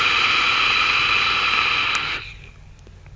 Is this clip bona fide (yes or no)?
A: yes